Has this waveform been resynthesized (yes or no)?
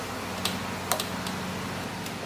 no